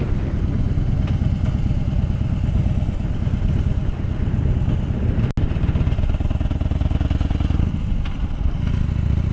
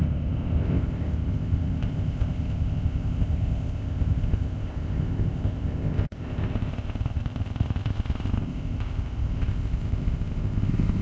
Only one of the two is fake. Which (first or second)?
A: second